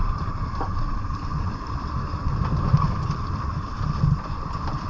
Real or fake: real